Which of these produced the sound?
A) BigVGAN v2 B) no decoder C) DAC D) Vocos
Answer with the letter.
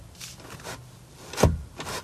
B